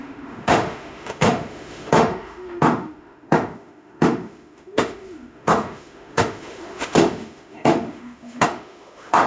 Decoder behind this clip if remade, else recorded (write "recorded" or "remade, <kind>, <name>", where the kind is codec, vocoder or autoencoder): remade, autoencoder, DAC-VAE